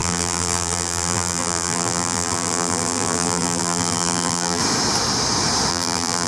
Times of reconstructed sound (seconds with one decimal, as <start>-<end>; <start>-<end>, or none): 0.0-4.6; 5.7-6.3